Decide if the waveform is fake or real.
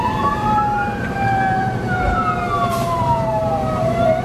fake